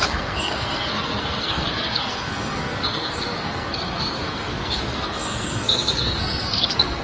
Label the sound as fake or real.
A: fake